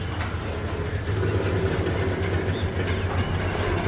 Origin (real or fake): real